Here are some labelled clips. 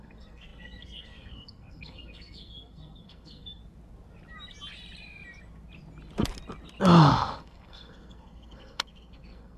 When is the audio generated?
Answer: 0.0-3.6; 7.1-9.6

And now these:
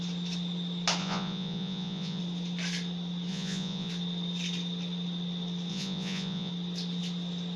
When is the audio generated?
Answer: 1.0-2.2; 3.3-3.9; 5.7-6.5

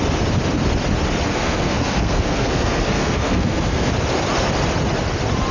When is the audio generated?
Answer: 1.3-3.9